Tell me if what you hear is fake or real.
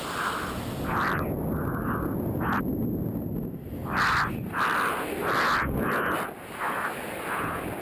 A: real